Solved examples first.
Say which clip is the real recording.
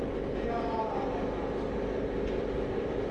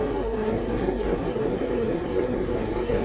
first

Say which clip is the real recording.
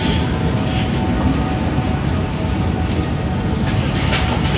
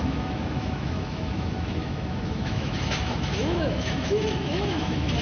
first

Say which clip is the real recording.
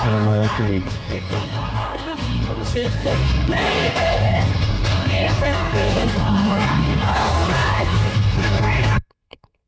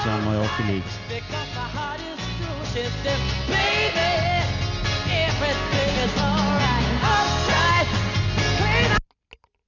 second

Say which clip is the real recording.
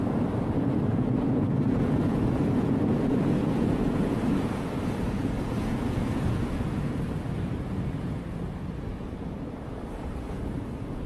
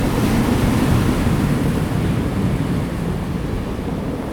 second